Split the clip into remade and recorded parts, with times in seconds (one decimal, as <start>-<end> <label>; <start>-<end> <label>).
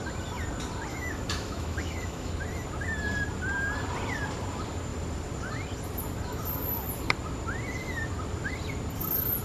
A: 0.0-0.9 recorded; 0.9-2.3 remade; 2.3-9.4 recorded